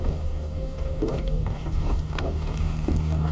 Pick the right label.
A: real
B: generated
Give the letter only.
B